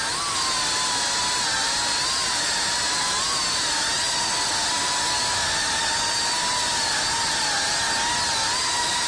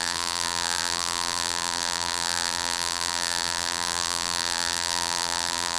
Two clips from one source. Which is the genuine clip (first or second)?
first